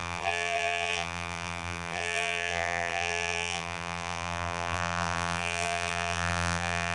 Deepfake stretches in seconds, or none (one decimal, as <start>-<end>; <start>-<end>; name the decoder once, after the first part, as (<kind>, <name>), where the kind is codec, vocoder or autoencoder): 0.0-6.9 (vocoder, BigVGAN v2)